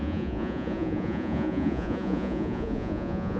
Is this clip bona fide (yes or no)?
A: no